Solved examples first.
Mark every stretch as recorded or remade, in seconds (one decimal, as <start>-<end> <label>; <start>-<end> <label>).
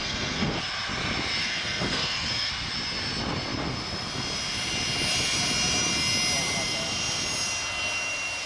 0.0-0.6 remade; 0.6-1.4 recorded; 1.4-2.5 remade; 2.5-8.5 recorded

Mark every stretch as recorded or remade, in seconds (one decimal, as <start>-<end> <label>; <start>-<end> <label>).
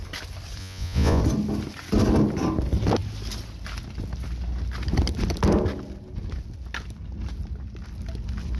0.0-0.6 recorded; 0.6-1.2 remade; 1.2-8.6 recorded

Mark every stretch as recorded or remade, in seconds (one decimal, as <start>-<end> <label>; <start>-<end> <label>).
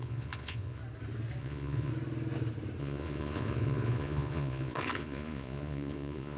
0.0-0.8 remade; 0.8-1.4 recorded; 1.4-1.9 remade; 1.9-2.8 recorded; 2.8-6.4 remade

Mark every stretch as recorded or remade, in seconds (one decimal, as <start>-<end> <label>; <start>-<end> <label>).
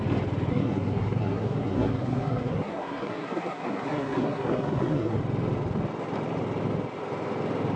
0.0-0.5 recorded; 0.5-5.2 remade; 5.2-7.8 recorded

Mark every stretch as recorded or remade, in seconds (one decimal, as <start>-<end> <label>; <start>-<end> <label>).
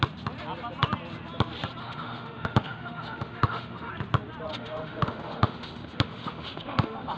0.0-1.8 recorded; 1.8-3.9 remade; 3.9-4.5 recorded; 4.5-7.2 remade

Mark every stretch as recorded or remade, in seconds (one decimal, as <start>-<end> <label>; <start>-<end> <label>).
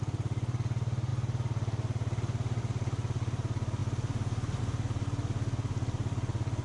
0.0-6.6 recorded